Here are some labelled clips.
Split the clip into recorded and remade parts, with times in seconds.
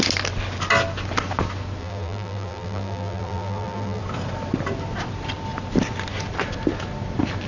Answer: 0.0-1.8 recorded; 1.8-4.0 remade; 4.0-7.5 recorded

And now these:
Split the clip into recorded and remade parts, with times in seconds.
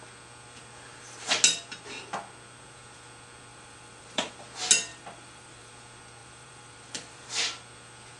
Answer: 0.0-3.5 recorded; 3.5-4.3 remade; 4.3-4.9 recorded; 4.9-5.7 remade; 5.7-6.2 recorded; 6.2-7.3 remade; 7.3-8.2 recorded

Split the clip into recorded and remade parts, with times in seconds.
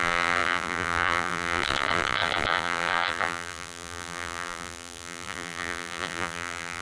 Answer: 0.0-6.8 remade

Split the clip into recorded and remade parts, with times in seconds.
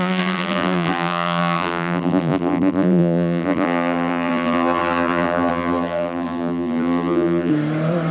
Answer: 0.0-7.5 remade; 7.5-8.1 recorded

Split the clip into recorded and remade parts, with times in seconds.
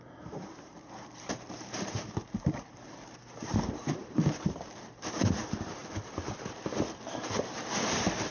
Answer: 0.0-5.8 remade; 5.8-7.4 recorded; 7.4-8.3 remade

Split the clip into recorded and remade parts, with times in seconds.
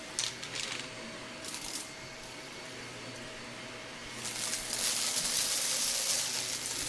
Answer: 0.0-1.2 recorded; 1.2-3.4 remade; 3.4-6.9 recorded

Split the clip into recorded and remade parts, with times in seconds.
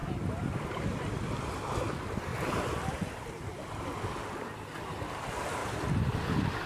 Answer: 0.0-6.7 remade